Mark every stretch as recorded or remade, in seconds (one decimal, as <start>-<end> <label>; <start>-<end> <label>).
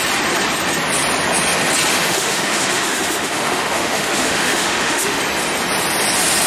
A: 0.0-1.9 recorded; 1.9-5.2 remade; 5.2-6.5 recorded